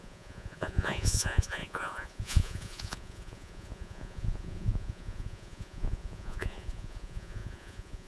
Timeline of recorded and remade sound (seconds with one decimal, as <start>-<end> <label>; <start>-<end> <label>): 0.0-8.1 remade